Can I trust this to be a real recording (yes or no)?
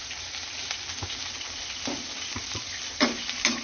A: yes